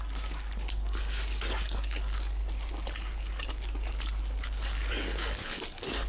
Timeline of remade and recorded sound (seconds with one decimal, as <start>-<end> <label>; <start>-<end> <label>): 0.0-2.4 remade; 2.4-3.3 recorded; 3.3-6.1 remade